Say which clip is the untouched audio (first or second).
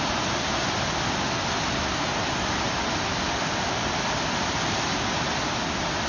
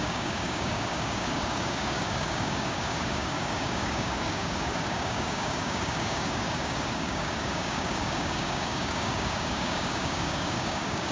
first